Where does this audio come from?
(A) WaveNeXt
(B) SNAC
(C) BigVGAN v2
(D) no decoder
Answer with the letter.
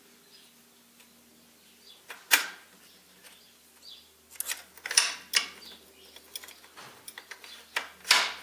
D